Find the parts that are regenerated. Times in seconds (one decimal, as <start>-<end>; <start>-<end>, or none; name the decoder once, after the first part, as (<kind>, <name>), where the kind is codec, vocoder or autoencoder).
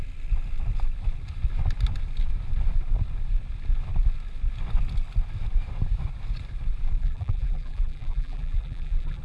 7.0-9.2 (vocoder, BigVGAN v2)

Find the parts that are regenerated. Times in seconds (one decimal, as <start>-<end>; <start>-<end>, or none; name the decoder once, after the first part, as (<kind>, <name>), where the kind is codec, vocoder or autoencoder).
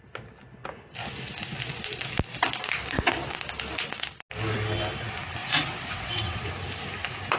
5.4-6.5 (vocoder, WaveNeXt)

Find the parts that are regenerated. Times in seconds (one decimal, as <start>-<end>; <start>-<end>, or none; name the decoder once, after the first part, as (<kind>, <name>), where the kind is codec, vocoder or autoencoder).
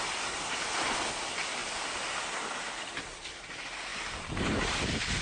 none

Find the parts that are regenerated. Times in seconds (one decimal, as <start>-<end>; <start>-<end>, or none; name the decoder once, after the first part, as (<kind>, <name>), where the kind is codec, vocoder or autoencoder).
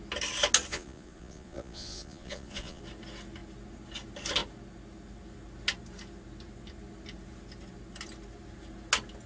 0.7-2.8 (vocoder, Vocos)